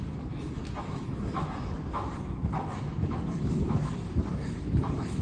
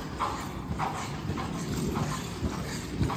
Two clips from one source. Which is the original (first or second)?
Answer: second